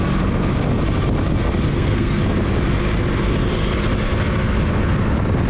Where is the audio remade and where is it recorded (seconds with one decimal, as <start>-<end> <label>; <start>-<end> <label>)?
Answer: 0.0-1.7 recorded; 1.7-2.2 remade; 2.2-5.5 recorded